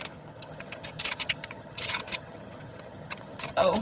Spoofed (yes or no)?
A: yes